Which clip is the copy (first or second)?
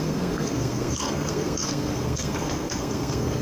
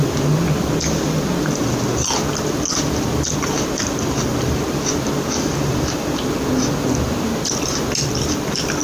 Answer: first